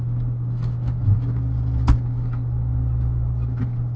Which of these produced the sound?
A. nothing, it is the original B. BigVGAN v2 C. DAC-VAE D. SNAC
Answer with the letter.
A